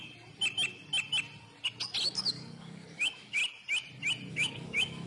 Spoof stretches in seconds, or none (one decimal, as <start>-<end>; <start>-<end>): 2.0-3.4; 4.3-5.1